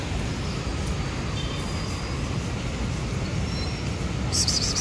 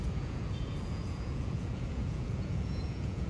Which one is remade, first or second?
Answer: second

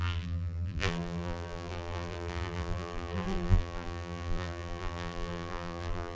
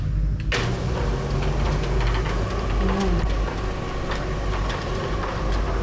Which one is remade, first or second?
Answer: first